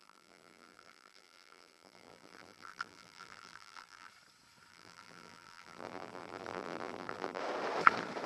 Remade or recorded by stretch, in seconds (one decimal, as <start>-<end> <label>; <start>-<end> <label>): 0.0-4.1 remade; 4.1-4.7 recorded; 4.7-7.4 remade; 7.4-8.3 recorded